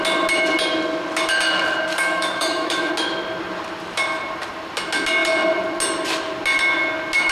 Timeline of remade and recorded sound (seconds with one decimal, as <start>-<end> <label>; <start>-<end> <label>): 0.0-1.9 recorded; 1.9-2.9 remade; 2.9-7.3 recorded